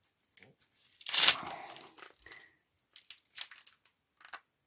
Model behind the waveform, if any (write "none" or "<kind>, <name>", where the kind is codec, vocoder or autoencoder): none